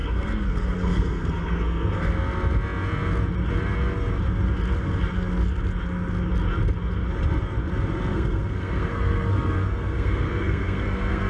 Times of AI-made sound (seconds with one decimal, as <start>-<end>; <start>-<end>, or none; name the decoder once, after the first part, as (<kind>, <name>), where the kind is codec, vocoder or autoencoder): 0.0-2.1 (codec, SNAC); 8.1-11.3